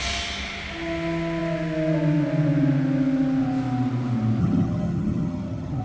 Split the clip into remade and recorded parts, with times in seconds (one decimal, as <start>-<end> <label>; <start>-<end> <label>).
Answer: 0.0-4.4 recorded; 4.4-5.8 remade